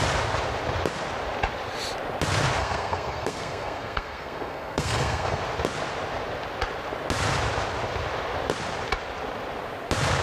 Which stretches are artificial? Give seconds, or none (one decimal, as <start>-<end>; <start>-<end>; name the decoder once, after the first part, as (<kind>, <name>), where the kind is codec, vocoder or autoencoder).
2.6-5.4 (codec, SNAC)